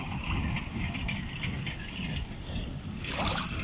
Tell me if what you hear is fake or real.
real